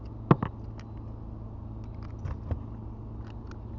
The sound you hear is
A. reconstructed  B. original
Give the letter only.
B